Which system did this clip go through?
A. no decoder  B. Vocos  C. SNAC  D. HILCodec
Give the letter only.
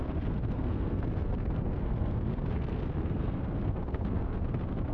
C